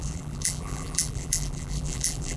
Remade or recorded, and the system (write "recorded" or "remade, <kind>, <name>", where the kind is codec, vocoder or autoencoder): remade, vocoder, BigVGAN v2